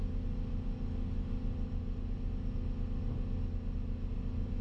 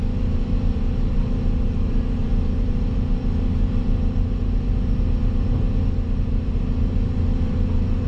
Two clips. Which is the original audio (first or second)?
first